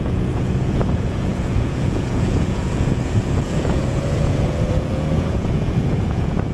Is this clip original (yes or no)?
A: no